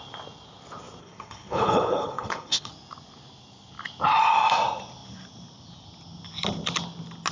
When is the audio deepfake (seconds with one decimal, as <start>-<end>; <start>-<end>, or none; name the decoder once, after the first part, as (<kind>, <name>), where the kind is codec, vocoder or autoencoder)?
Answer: 1.0-2.7 (codec, HILCodec)